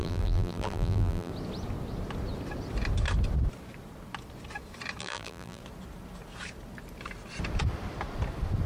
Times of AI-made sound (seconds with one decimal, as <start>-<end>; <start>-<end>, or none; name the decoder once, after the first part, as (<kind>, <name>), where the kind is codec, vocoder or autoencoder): 0.0-1.3 (vocoder, BigVGAN v2); 5.0-5.6